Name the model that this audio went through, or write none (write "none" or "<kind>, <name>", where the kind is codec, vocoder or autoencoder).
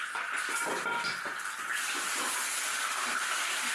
none